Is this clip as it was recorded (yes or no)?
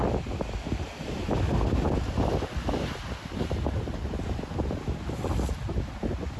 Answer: yes